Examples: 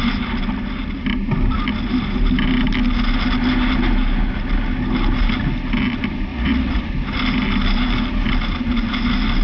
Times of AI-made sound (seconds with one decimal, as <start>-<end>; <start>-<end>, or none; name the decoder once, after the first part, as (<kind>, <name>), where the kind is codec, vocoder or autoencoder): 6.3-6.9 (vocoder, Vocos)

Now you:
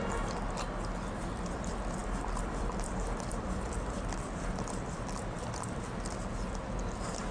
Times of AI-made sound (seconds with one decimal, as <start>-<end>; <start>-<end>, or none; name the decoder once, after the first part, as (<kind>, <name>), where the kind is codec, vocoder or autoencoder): 2.0-5.8 (vocoder, BigVGAN v2)

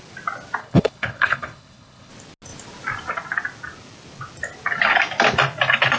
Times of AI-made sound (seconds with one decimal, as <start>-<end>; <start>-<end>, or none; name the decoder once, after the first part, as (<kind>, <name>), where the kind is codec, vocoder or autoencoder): 0.6-2.1 (codec, HILCodec)

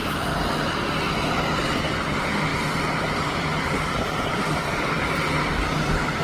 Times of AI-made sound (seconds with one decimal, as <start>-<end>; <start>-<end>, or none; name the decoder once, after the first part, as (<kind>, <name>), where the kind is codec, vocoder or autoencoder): 1.7-2.5 (vocoder, BigVGAN v2); 3.1-6.2

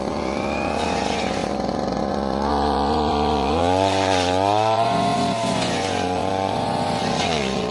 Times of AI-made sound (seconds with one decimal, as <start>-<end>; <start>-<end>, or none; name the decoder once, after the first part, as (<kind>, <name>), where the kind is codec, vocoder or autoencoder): 0.0-7.7 (vocoder, Vocos)

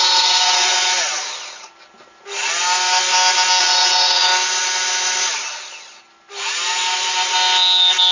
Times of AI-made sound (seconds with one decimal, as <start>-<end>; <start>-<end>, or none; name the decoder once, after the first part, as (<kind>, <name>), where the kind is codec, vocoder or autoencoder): 0.0-0.9 (vocoder, WaveNeXt); 3.6-4.3